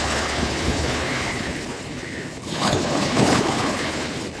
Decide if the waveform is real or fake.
fake